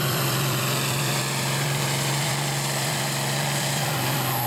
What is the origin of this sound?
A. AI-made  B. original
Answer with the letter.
A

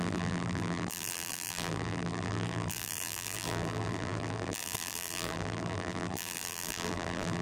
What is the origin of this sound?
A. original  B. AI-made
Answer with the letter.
B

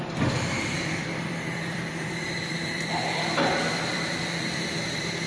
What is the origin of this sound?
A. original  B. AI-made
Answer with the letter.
B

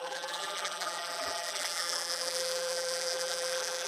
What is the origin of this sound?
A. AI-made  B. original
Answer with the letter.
A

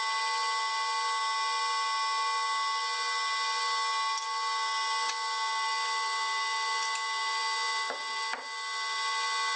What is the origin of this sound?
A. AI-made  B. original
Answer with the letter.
B